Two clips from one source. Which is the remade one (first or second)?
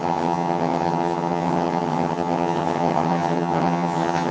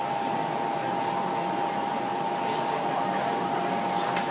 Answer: first